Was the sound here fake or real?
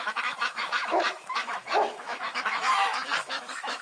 fake